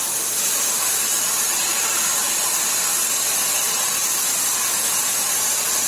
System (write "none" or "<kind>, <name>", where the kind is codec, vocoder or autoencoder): none